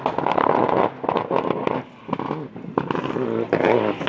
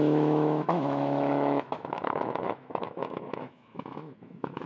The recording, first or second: first